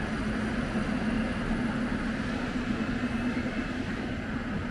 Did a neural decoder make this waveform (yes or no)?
no